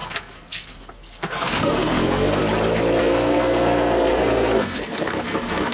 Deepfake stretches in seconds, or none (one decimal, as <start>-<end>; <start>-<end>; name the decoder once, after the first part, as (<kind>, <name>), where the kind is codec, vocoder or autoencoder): 0.0-2.4 (codec, SNAC); 3.0-5.7